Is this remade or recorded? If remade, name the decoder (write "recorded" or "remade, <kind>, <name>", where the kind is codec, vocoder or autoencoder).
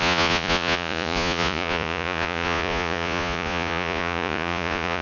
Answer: remade, vocoder, Vocos